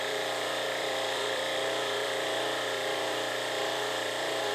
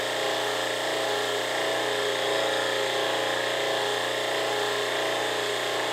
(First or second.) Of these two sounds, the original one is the second